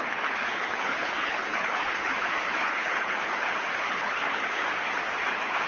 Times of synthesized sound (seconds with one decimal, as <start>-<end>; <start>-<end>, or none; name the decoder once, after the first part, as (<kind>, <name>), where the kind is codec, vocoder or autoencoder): 0.0-4.6 (codec, HILCodec); 5.3-5.7